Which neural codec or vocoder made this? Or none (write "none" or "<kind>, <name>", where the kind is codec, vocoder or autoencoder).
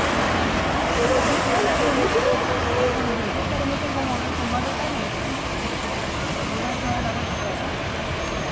none